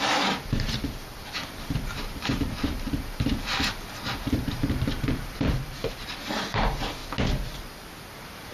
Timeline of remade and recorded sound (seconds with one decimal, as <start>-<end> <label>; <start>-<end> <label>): 0.0-7.0 remade; 7.0-8.1 recorded; 8.1-8.5 remade